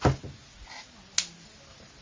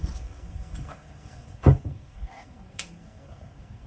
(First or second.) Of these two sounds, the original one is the first